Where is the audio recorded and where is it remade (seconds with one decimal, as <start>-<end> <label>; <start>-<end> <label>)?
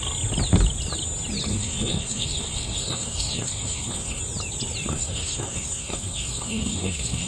0.0-1.5 recorded; 1.5-4.2 remade; 4.2-4.9 recorded; 4.9-7.3 remade